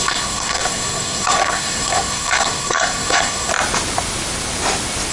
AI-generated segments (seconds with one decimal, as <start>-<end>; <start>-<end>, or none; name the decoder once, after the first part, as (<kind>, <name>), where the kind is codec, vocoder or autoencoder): 0.0-3.5 (codec, SNAC)